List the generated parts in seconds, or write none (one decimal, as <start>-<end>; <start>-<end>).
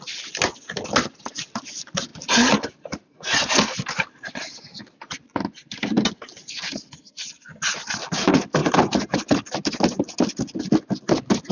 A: none